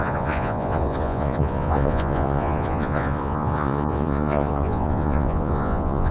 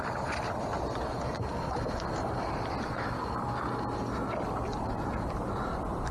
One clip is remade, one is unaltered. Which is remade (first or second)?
first